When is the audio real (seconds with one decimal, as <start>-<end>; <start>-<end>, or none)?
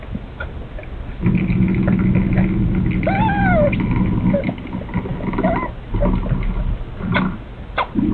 0.0-8.1